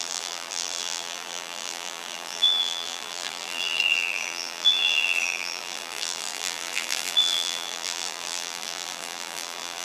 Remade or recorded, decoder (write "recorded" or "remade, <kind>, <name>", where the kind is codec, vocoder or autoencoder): remade, vocoder, BigVGAN v2